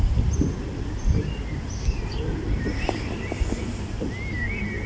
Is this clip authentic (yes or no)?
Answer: yes